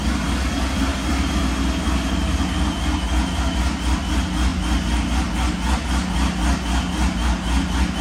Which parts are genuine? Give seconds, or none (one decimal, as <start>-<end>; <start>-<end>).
0.0-0.9; 1.4-8.0